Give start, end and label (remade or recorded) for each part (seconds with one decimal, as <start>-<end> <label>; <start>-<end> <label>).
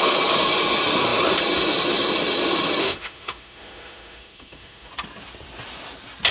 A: 0.0-2.8 recorded; 2.8-4.9 remade; 4.9-6.3 recorded